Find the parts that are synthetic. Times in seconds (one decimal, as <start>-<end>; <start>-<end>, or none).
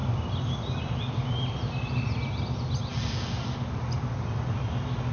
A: none